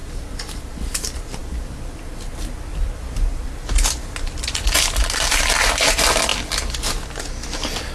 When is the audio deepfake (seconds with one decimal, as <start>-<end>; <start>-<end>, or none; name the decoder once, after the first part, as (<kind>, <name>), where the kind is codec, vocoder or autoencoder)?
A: 0.0-0.8 (vocoder, BigVGAN v2); 1.4-2.3; 2.7-3.5

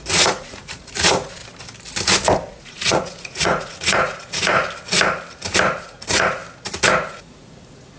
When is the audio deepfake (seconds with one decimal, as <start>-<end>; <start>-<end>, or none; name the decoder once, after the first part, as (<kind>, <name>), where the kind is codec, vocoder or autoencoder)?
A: 0.0-1.4 (vocoder, Vocos); 2.5-4.5; 5.8-6.4; 6.9-8.0

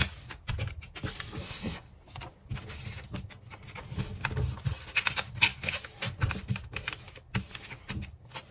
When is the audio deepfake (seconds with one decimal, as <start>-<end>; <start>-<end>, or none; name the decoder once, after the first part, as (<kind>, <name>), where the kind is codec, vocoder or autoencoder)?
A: 1.4-1.9 (codec, SNAC)

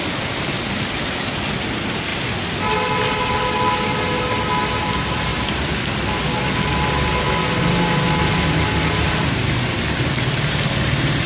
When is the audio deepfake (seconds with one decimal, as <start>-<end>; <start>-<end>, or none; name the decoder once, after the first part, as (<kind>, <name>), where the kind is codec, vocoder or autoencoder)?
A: none

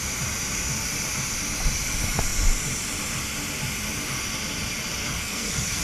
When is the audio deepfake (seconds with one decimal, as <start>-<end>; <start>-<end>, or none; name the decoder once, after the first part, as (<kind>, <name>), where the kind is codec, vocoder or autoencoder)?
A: 5.0-5.8 (codec, SNAC)

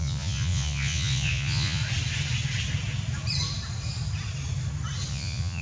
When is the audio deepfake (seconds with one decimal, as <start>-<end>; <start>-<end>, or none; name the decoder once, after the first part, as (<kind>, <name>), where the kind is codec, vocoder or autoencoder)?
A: 0.0-1.8 (vocoder, Vocos); 5.1-5.6